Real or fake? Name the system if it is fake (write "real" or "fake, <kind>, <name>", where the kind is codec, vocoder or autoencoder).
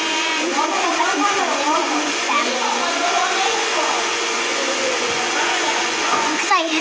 fake, vocoder, Vocos